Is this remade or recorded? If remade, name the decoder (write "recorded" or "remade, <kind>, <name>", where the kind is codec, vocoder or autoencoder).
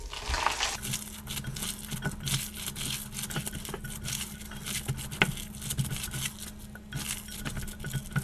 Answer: recorded